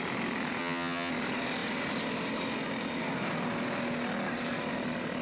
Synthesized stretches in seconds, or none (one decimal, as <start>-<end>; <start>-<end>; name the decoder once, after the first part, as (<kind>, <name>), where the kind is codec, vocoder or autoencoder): 0.6-1.1 (vocoder, HiFi-GAN)